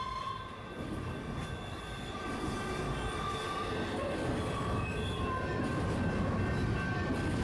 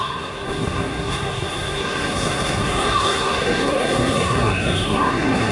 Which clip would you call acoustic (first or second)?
first